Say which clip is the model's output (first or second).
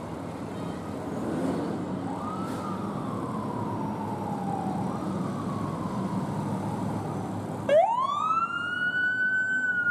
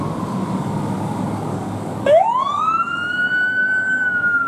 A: second